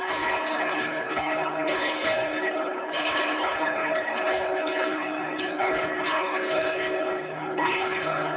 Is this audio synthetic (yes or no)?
yes